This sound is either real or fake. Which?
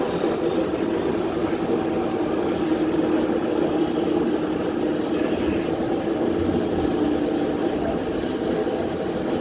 real